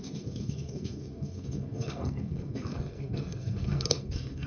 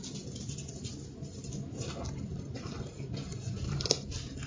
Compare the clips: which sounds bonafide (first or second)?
second